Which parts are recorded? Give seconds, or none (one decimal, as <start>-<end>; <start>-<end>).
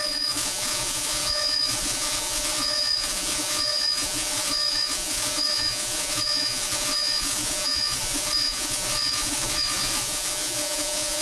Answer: none